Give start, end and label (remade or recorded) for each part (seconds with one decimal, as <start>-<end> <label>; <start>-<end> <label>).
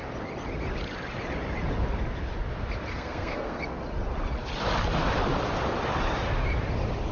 0.0-2.9 recorded; 2.9-3.6 remade; 3.6-7.1 recorded